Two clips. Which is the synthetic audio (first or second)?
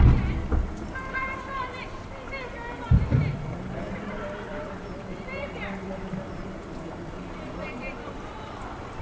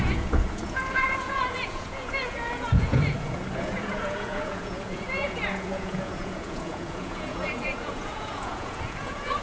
second